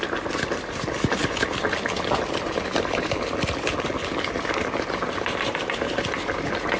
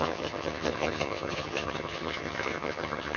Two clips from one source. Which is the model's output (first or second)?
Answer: second